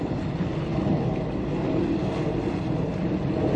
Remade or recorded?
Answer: recorded